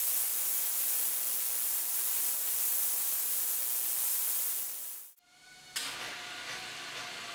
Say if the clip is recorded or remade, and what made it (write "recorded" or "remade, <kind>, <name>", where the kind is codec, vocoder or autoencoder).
recorded